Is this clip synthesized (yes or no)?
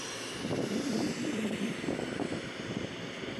no